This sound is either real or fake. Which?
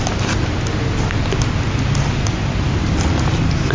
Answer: real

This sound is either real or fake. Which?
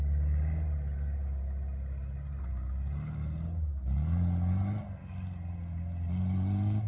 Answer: real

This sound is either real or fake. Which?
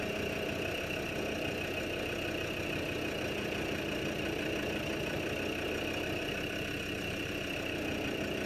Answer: real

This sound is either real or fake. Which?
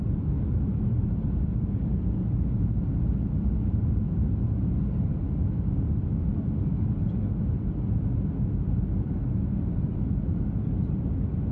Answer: real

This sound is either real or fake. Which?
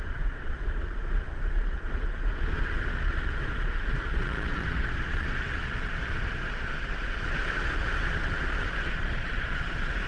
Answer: fake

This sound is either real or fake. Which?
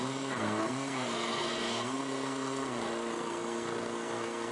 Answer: fake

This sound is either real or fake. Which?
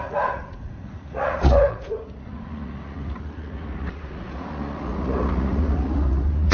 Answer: fake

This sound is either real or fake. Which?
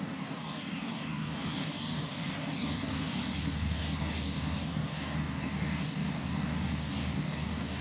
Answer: fake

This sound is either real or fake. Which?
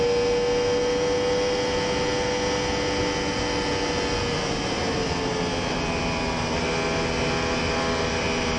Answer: real